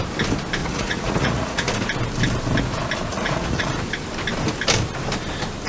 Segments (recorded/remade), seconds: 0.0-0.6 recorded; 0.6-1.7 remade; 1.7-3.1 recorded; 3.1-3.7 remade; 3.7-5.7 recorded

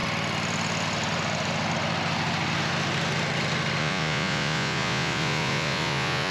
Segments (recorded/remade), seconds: 0.0-3.8 recorded; 3.8-6.3 remade

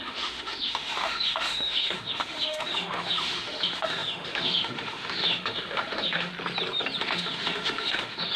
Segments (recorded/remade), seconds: 0.0-6.3 remade; 6.3-7.0 recorded; 7.0-8.4 remade

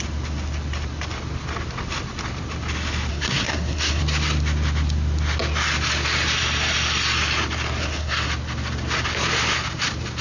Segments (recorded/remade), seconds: 0.0-3.1 recorded; 3.1-4.0 remade; 4.0-7.8 recorded; 7.8-8.3 remade; 8.3-10.2 recorded

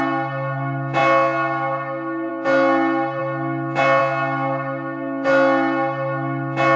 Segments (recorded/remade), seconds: 0.0-6.8 recorded

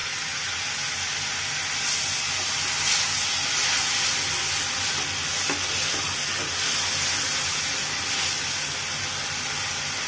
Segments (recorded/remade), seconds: 0.0-10.1 recorded

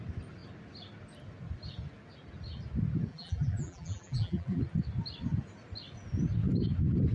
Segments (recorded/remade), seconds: 0.0-3.1 recorded; 3.1-4.6 remade; 4.6-7.1 recorded

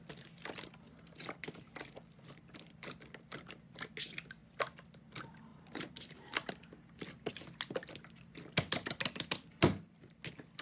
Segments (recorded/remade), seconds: 0.0-5.5 recorded; 5.5-6.5 remade; 6.5-10.6 recorded